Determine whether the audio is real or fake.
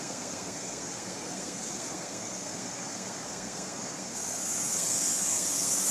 fake